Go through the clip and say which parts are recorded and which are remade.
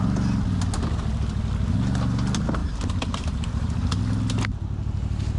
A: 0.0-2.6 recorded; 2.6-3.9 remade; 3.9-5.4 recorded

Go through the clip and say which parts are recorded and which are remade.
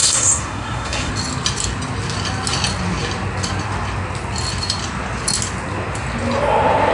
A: 0.0-1.1 remade; 1.1-6.9 recorded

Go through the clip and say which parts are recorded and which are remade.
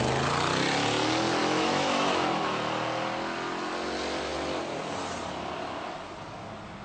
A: 0.0-1.4 recorded; 1.4-2.7 remade; 2.7-6.8 recorded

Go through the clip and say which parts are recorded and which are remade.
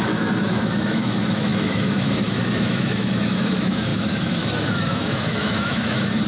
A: 0.0-6.3 remade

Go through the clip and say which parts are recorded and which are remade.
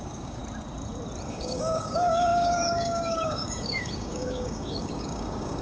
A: 0.0-0.4 remade; 0.4-1.3 recorded; 1.3-5.6 remade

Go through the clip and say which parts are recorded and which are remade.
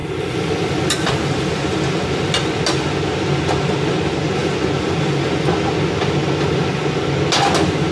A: 0.0-2.5 remade; 2.5-4.4 recorded; 4.4-6.8 remade; 6.8-7.9 recorded